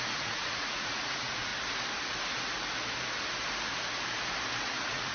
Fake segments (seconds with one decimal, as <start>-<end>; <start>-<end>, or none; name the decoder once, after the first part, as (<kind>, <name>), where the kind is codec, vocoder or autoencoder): 0.0-1.5 (vocoder, Vocos); 4.6-5.1